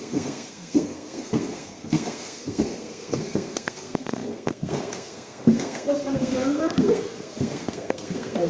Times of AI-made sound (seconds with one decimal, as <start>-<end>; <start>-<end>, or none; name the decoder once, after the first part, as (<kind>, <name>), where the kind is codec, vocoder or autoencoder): 0.0-8.5 (codec, SNAC)